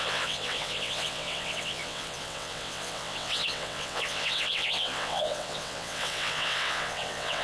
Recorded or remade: remade